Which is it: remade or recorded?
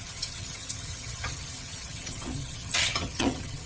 remade